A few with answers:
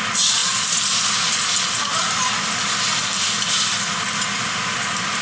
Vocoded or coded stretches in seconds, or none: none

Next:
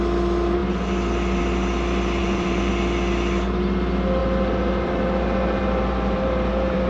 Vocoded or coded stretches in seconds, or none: 2.2-2.7 (vocoder, BigVGAN v2); 4.2-6.9

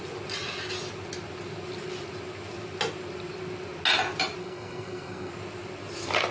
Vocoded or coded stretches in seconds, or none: 4.4-5.3 (codec, SNAC)

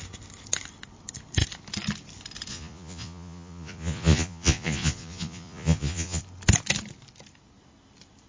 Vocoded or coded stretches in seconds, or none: 2.5-6.2 (vocoder, Vocos)

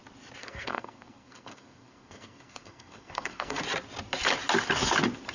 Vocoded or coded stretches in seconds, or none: 0.4-3.6 (codec, SNAC)

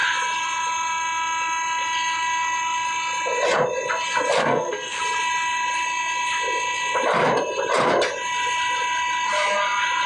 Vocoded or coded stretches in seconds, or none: 4.4-5.0 (codec, SNAC)

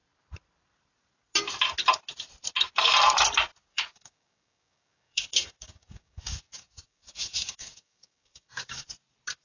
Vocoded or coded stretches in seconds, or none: 3.7-8.8 (codec, DAC)